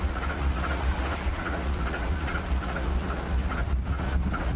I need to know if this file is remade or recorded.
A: remade